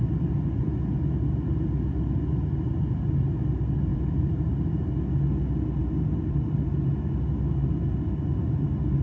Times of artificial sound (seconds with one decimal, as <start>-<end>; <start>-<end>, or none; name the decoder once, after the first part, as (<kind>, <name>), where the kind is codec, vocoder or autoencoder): 3.9-4.8 (vocoder, BigVGAN v2); 5.8-6.9